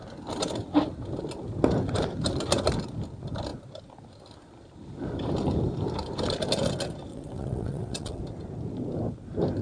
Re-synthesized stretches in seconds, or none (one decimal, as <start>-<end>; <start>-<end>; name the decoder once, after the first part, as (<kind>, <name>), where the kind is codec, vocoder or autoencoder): 7.1-8.2 (vocoder, WaveNeXt)